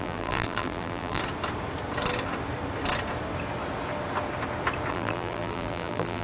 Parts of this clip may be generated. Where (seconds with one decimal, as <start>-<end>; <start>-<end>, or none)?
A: 0.0-1.2; 4.9-6.2